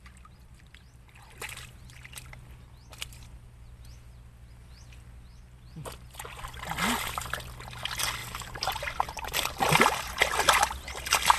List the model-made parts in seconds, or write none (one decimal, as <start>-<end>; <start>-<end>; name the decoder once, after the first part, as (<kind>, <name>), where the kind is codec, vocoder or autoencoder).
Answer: 8.2-8.9 (vocoder, BigVGAN v2)